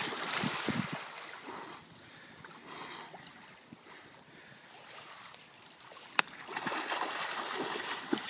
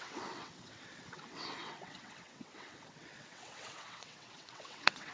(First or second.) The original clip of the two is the first